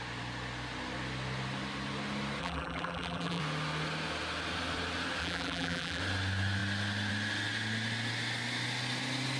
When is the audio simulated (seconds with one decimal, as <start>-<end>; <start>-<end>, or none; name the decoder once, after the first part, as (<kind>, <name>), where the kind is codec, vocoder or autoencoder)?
2.4-3.4 (vocoder, BigVGAN v2); 5.2-6.0